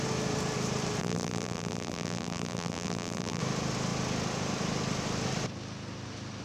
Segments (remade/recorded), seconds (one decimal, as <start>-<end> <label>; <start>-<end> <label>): 0.0-1.0 recorded; 1.0-3.4 remade; 3.4-6.4 recorded